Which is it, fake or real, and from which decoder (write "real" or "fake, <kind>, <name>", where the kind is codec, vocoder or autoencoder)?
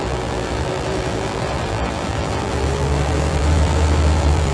fake, vocoder, BigVGAN v2